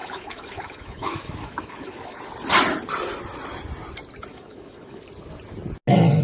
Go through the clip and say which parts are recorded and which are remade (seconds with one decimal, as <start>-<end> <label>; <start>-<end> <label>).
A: 0.0-2.2 remade; 2.2-4.3 recorded; 4.3-5.0 remade; 5.0-6.2 recorded